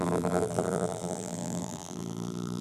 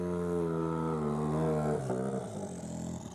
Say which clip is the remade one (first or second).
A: first